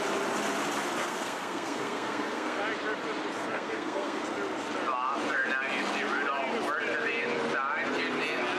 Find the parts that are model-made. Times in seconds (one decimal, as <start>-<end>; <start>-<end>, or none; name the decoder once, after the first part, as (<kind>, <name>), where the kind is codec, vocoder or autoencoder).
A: 1.0-2.6 (codec, SNAC); 3.4-4.2